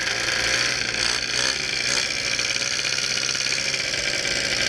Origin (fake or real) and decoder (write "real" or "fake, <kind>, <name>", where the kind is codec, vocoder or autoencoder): real